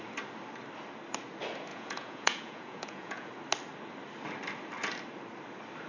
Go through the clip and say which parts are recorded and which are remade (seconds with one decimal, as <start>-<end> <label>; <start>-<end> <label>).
0.0-1.7 recorded; 1.7-3.3 remade; 3.3-5.9 recorded